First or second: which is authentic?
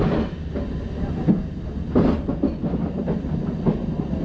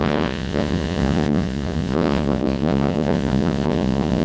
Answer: first